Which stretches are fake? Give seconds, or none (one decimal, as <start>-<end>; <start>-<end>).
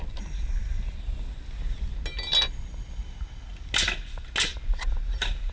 none